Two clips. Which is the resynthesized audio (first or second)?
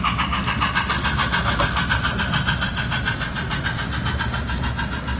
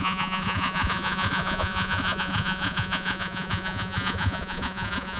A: second